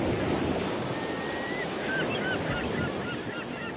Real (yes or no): yes